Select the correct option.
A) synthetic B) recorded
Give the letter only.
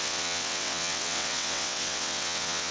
A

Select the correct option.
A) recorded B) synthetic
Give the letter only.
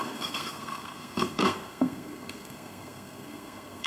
B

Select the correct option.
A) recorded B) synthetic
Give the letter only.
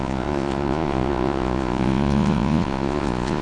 B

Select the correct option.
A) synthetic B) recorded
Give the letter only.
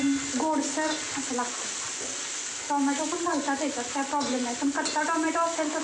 B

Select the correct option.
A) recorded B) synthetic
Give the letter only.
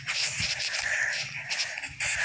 A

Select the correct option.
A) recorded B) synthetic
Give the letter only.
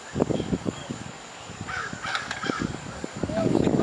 B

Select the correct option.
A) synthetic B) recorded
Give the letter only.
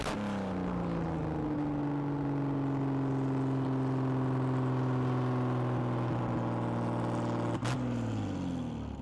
B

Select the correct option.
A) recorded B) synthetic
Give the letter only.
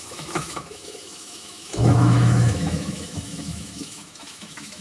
B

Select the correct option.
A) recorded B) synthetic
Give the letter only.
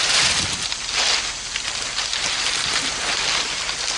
A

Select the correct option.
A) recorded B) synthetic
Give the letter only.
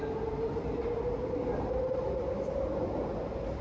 A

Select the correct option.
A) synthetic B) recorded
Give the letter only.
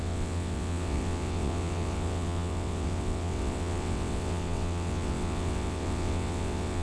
A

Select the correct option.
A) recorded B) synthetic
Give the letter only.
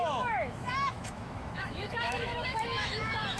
B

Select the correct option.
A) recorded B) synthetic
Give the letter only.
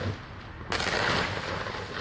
A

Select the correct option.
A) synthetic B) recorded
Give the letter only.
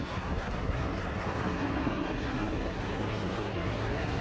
A